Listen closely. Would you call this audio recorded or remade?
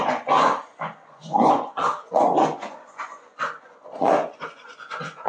remade